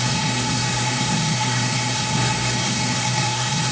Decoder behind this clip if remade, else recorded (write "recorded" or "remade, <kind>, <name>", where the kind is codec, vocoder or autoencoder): remade, codec, SNAC